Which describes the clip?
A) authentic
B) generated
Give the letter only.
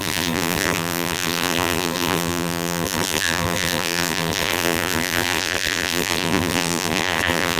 B